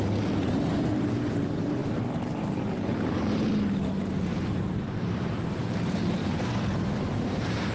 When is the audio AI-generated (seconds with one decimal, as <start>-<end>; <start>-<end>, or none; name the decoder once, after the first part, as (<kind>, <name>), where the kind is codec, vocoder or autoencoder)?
0.0-3.5 (vocoder, BigVGAN v2); 4.3-7.7